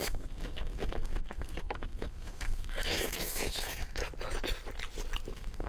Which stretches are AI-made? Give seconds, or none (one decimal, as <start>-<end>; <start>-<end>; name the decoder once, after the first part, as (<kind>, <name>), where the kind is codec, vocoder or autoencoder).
0.0-4.0 (codec, SNAC); 5.3-5.7